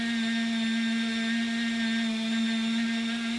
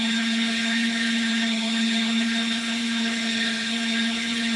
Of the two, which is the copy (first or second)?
second